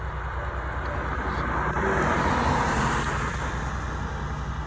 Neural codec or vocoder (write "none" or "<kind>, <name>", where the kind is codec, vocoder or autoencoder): none